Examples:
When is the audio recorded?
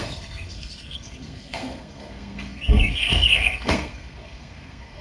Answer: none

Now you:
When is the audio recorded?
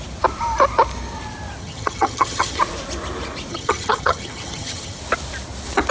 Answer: 0.0-1.6; 2.6-3.5; 5.0-5.9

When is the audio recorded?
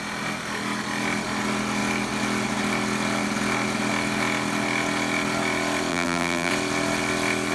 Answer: 0.0-5.9; 6.5-7.5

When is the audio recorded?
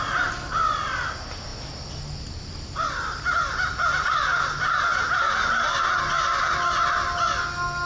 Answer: 0.0-7.9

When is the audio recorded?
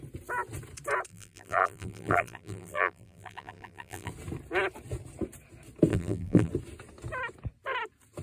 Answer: 0.0-1.1; 4.1-5.9; 6.5-8.2